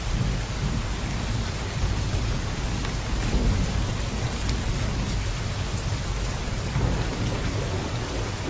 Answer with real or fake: real